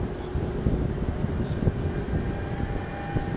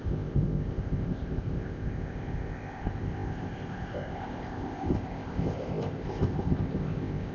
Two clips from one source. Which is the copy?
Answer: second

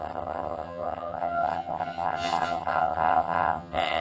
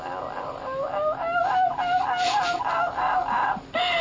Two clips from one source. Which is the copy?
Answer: first